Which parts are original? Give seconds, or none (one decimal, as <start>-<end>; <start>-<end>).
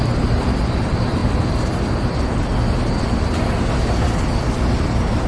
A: 0.0-5.3